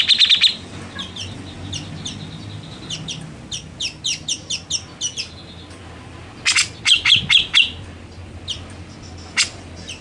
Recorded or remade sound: recorded